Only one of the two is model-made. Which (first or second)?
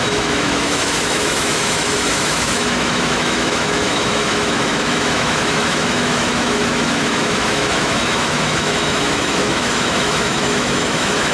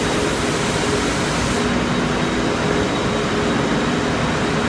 first